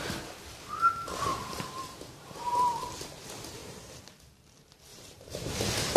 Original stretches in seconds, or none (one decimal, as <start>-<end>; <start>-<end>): 0.0-1.3; 3.0-3.6; 4.2-4.9; 5.6-6.0